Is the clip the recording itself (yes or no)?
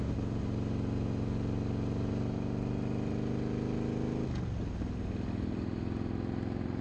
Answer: yes